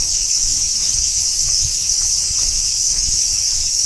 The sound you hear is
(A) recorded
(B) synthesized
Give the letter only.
B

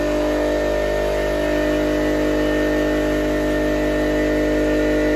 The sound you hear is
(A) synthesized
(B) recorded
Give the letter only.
B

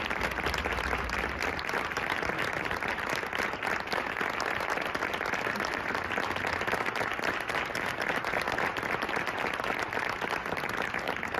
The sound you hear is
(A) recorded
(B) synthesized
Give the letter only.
A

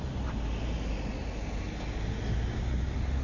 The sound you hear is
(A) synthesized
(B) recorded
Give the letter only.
B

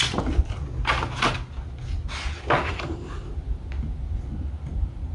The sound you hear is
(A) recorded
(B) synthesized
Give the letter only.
A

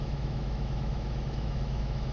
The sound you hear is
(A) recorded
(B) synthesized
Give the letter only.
B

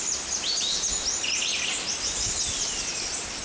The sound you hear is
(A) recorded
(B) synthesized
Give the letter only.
A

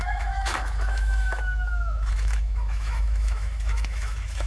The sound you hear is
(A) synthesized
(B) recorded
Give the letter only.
A